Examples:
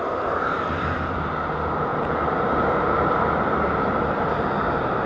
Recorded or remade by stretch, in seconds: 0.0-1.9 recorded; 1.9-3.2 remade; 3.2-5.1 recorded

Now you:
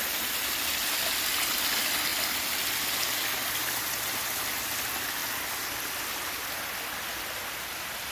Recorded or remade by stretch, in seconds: 0.0-8.1 recorded

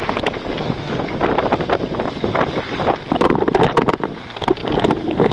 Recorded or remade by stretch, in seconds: 0.0-5.3 recorded

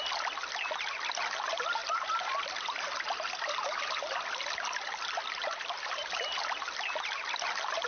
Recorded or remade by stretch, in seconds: 0.0-1.8 recorded; 1.8-6.4 remade; 6.4-7.9 recorded

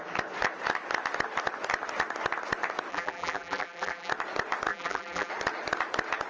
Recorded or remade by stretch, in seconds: 0.0-2.9 recorded; 2.9-4.1 remade; 4.1-4.7 recorded; 4.7-5.3 remade; 5.3-6.3 recorded

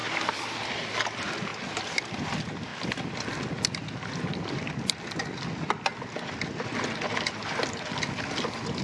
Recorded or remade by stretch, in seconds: 0.0-0.7 remade; 0.7-1.5 recorded; 1.5-2.0 remade; 2.0-8.8 recorded

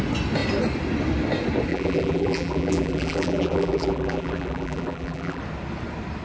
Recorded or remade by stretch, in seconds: 0.0-1.7 recorded; 1.7-5.4 remade; 5.4-6.2 recorded

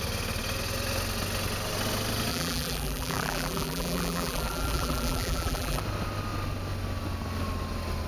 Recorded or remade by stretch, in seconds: 0.0-2.3 recorded; 2.3-5.8 remade; 5.8-8.1 recorded